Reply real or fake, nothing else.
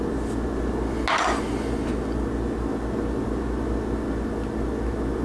real